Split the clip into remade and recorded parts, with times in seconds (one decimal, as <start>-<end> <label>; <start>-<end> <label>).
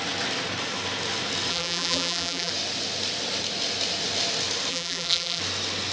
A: 0.0-1.5 recorded; 1.5-2.5 remade; 2.5-4.7 recorded; 4.7-5.4 remade; 5.4-5.9 recorded